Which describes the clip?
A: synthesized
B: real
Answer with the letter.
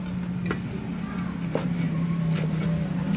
B